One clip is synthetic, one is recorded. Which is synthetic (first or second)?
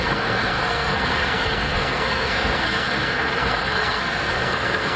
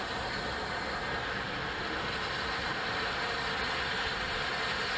first